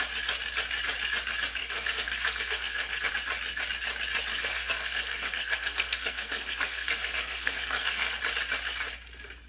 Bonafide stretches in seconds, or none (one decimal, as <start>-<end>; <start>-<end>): 0.0-1.6; 3.1-4.3; 8.2-9.5